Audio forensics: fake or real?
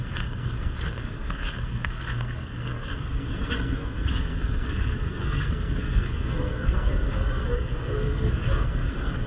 fake